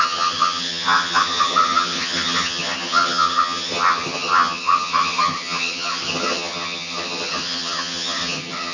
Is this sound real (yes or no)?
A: no